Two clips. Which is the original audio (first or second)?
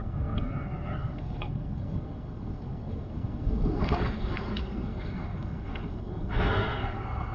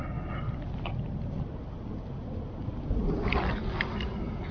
second